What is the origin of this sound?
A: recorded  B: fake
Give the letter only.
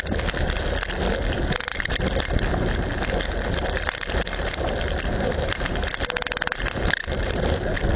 A